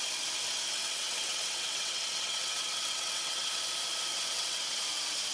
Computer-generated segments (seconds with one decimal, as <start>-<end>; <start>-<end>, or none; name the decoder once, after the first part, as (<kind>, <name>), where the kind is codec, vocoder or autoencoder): 0.8-3.6 (vocoder, WaveNeXt); 4.1-4.8

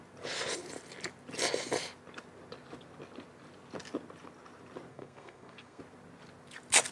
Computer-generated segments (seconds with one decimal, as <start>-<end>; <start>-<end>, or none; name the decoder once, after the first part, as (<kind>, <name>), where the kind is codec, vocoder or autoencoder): 4.9-5.8 (codec, SNAC)

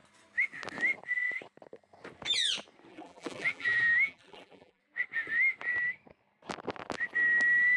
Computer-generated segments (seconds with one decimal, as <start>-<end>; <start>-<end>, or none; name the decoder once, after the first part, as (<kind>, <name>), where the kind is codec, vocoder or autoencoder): 2.9-4.8 (vocoder, BigVGAN v2)

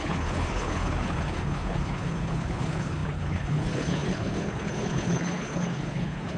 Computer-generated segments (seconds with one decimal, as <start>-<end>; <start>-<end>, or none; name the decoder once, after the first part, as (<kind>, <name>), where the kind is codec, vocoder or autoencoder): 0.0-6.4 (codec, HILCodec)

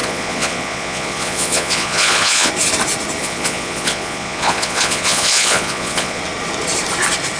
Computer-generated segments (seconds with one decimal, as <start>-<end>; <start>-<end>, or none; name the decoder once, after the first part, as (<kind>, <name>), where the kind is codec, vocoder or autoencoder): 0.0-2.5 (vocoder, Vocos); 3.2-6.2

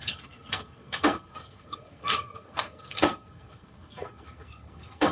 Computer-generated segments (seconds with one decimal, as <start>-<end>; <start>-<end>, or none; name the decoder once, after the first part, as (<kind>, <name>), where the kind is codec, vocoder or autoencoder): 0.0-5.1 (codec, SNAC)

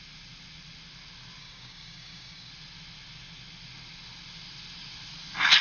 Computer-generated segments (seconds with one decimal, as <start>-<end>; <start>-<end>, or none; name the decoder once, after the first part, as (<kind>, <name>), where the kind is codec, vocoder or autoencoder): 1.4-2.5 (codec, DAC)

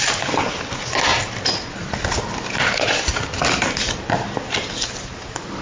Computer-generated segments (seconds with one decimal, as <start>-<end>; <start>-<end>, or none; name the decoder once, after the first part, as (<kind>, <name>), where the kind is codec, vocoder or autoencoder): none